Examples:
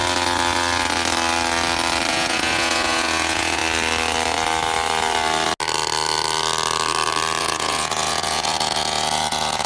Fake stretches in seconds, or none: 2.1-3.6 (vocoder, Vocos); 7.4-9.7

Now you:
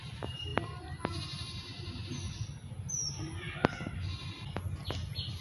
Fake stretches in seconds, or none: none

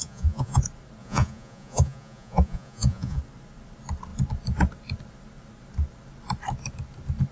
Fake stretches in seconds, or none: 0.0-0.6 (vocoder, Vocos); 1.0-3.2

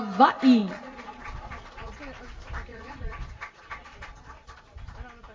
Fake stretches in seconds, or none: 0.6-2.0 (vocoder, Vocos); 2.7-4.6